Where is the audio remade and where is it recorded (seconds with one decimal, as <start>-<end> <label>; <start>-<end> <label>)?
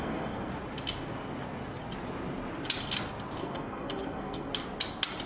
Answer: 0.0-0.5 remade; 0.5-3.4 recorded; 3.4-4.5 remade; 4.5-5.3 recorded